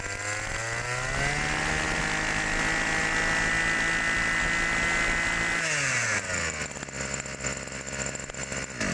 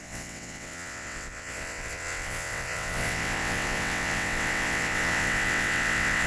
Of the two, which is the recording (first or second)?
first